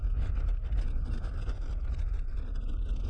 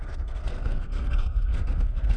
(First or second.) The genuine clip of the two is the first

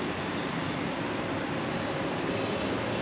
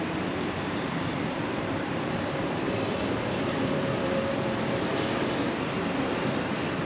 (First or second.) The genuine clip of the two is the first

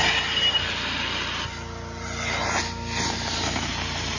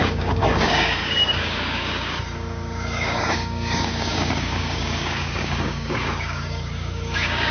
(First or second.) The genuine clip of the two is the first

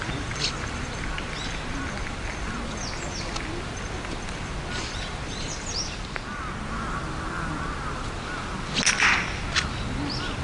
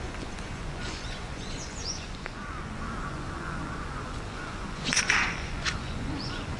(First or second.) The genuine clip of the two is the first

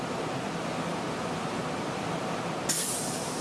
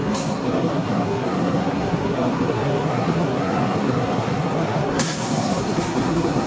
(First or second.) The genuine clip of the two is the first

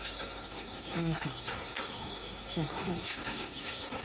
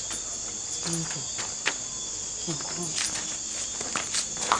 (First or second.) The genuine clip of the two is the second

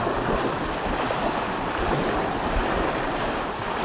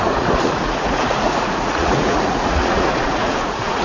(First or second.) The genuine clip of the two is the first